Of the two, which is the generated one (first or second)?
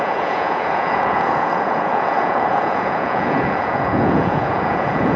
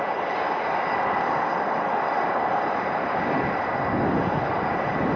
first